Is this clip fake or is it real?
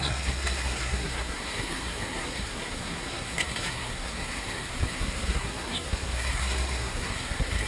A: fake